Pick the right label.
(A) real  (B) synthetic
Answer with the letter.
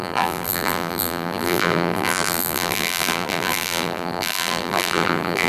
B